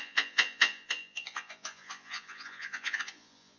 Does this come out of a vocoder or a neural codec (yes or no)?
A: yes